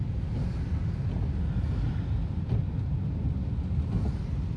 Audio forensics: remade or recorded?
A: recorded